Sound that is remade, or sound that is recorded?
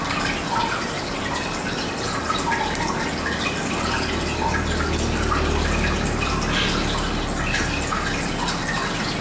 recorded